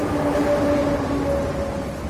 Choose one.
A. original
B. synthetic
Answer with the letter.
A